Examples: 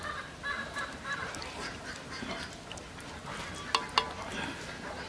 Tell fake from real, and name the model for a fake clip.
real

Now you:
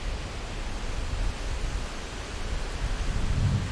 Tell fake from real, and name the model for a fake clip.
real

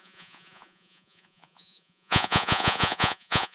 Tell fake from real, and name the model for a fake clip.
fake, vocoder, Vocos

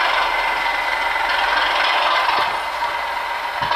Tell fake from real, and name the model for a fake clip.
real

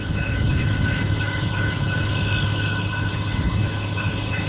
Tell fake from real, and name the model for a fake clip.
fake, codec, HILCodec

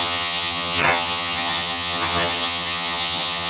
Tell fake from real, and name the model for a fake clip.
fake, vocoder, HiFi-GAN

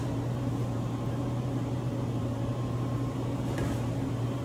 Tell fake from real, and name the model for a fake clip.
fake, vocoder, BigVGAN v2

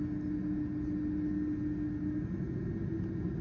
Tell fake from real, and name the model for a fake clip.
real